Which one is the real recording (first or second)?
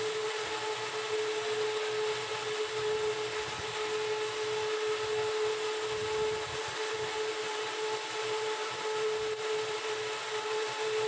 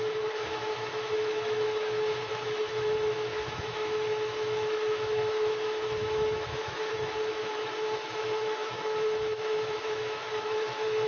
first